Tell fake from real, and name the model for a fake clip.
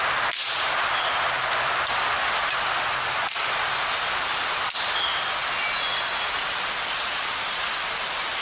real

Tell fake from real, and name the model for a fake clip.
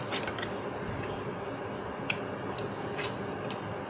real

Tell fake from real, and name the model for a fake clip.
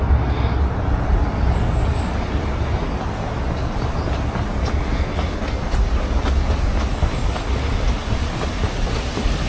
real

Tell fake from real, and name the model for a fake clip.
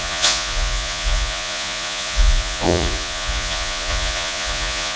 fake, vocoder, Vocos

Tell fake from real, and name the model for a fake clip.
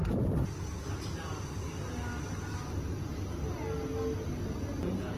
real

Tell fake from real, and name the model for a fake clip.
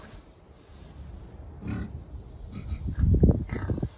real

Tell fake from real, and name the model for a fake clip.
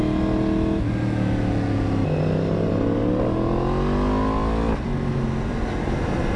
real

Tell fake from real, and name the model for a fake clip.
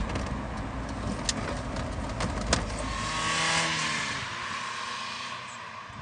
real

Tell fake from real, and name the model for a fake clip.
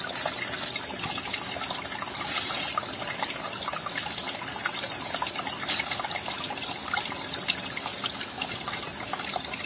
real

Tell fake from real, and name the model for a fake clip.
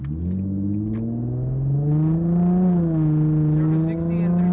real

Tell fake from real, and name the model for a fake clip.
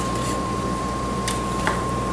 fake, vocoder, BigVGAN v2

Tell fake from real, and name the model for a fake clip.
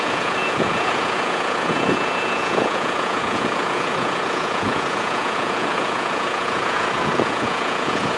fake, vocoder, Vocos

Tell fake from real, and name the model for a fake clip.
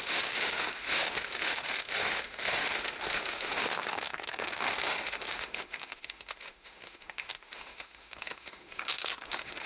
fake, autoencoder, DAC-VAE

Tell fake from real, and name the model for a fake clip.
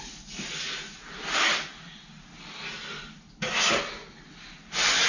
real